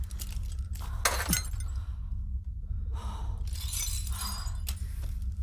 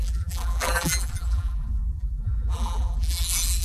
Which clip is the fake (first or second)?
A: second